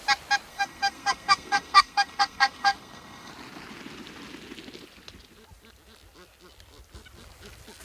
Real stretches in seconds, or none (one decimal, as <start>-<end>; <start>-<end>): 0.0-0.5; 3.3-7.8